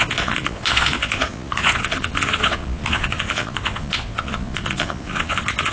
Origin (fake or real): fake